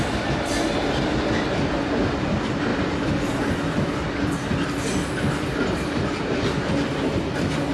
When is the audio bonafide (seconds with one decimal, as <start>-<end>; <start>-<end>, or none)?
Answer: 0.0-7.7